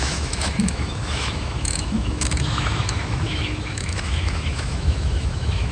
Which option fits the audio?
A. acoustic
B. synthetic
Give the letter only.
B